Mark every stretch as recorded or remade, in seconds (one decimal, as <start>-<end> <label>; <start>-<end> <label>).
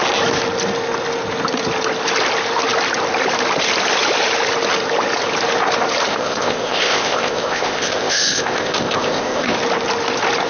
0.0-6.1 recorded; 6.1-9.6 remade; 9.6-10.5 recorded